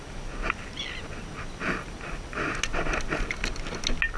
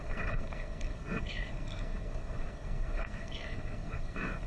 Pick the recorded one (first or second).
first